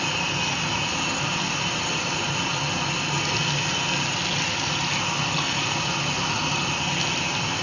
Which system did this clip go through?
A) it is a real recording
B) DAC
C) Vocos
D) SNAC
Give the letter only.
A